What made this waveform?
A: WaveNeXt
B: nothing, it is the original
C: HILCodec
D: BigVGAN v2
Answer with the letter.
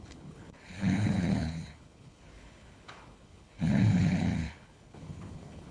C